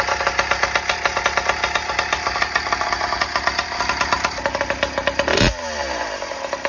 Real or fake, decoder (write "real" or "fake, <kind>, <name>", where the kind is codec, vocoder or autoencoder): real